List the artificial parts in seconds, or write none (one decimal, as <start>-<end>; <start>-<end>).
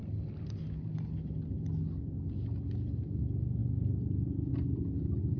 none